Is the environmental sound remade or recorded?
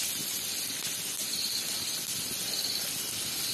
recorded